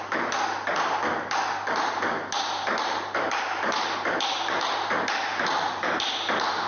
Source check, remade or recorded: recorded